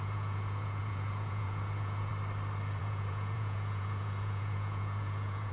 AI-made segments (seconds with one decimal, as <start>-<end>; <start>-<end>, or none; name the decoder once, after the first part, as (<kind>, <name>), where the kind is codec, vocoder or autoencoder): 0.0-2.1 (vocoder, Vocos); 2.8-5.5